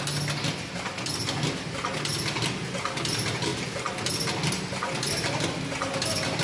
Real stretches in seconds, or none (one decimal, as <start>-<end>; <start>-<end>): 0.0-6.4